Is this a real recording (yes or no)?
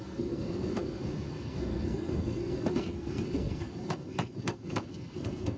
no